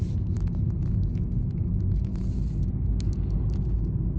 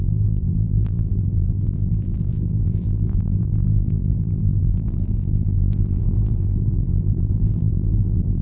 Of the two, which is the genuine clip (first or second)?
first